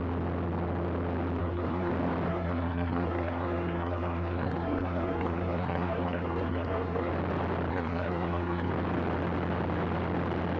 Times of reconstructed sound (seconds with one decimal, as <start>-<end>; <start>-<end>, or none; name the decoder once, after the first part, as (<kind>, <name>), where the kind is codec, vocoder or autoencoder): 1.4-1.9 (codec, SNAC); 2.3-7.1; 7.7-8.7